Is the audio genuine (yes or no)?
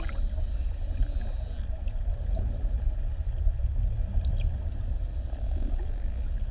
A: yes